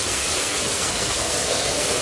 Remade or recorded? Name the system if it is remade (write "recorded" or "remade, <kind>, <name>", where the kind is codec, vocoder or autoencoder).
remade, codec, SNAC